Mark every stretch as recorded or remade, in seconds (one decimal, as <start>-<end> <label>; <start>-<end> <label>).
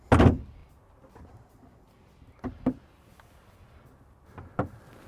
0.0-5.1 recorded